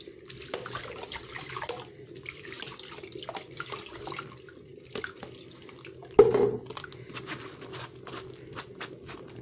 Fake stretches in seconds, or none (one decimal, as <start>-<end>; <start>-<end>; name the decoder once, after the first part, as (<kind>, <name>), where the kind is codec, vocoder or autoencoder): none